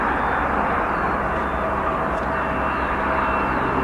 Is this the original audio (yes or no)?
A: yes